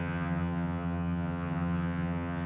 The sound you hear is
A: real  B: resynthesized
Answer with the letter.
B